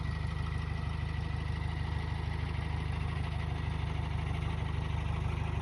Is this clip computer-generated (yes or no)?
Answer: no